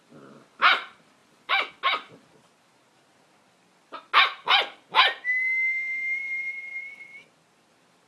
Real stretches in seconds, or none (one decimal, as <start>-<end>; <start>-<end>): 0.0-1.2; 1.7-8.1